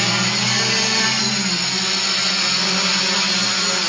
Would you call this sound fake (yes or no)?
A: no